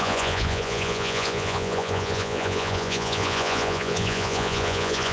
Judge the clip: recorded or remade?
remade